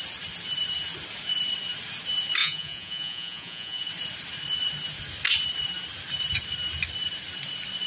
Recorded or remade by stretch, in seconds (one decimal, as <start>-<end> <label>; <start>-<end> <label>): 0.0-2.4 recorded; 2.4-3.9 remade; 3.9-7.9 recorded

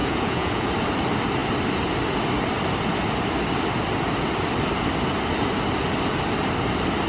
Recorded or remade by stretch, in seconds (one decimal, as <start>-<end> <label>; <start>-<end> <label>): 0.0-0.7 remade; 0.7-7.1 recorded

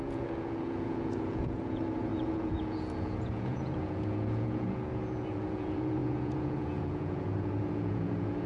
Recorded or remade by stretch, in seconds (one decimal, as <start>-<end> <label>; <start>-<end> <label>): 0.0-8.5 remade

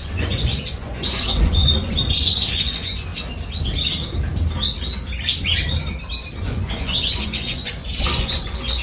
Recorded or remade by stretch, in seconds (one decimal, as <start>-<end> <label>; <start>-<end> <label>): 0.0-3.1 remade; 3.1-6.4 recorded; 6.4-8.8 remade

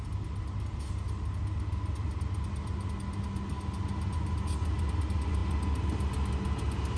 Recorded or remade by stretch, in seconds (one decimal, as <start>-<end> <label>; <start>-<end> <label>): 0.0-7.0 recorded

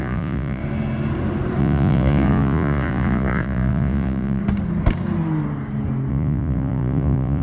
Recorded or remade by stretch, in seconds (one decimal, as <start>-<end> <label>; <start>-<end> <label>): 0.0-0.6 remade; 0.6-1.6 recorded; 1.6-4.4 remade; 4.4-6.1 recorded; 6.1-7.4 remade

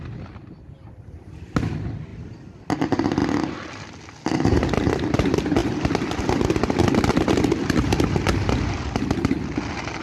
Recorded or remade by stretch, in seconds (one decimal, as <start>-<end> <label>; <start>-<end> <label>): 0.0-10.0 recorded

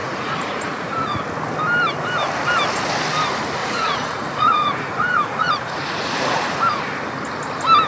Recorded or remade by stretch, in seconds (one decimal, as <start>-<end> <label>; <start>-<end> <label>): 0.0-1.2 remade; 1.2-3.6 recorded; 3.6-6.8 remade; 6.8-7.9 recorded